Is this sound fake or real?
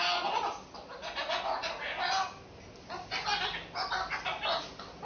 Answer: real